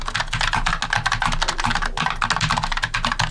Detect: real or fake real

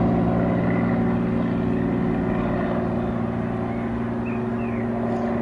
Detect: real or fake real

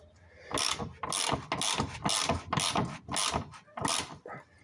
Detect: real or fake real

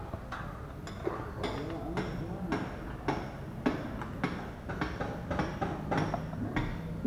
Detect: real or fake real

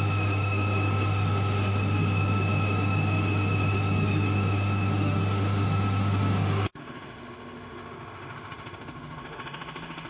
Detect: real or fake fake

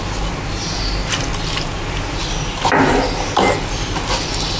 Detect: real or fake real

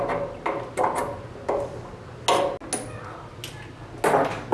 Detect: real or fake real